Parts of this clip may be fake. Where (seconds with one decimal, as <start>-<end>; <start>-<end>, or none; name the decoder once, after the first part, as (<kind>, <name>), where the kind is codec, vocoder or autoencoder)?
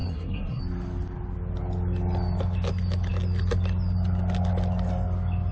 0.0-0.6 (codec, SNAC)